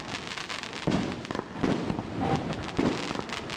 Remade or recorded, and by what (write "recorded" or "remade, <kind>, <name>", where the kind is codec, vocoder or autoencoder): recorded